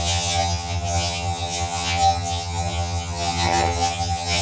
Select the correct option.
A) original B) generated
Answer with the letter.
B